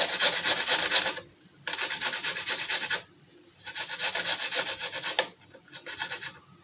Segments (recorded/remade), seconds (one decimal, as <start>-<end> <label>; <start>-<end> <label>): 0.0-6.6 recorded